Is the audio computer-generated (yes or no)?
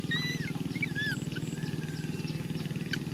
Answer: no